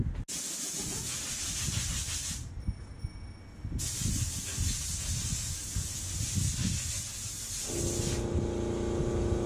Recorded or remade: recorded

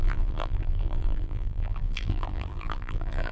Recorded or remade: remade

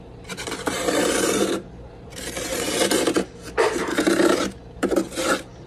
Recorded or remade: remade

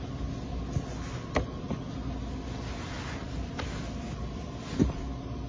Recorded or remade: recorded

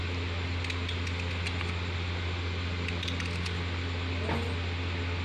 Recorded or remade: recorded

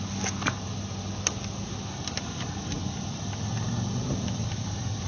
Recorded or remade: recorded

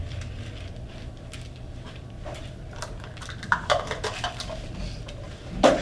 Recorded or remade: remade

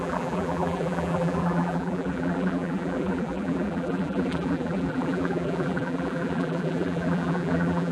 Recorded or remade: remade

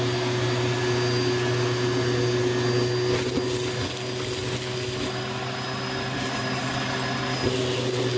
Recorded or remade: recorded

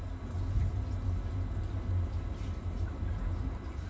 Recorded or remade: recorded